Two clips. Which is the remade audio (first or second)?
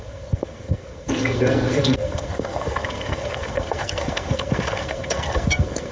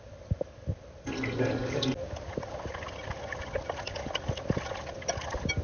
first